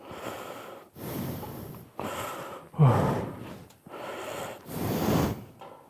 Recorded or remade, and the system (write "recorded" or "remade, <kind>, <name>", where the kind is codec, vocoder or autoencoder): recorded